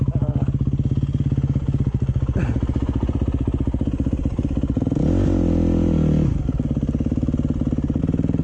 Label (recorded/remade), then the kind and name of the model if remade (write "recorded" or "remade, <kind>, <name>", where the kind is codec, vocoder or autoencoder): recorded